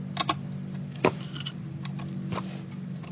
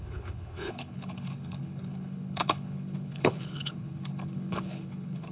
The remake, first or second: second